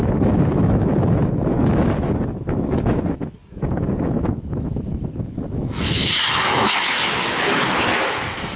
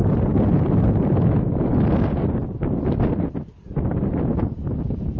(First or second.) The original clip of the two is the second